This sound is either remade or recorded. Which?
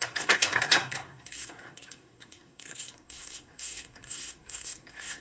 remade